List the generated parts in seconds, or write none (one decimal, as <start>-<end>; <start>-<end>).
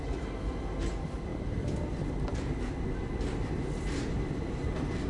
none